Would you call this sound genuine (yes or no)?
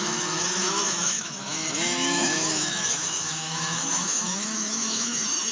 no